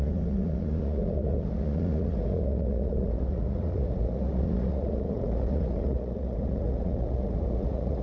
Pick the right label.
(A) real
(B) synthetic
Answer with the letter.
B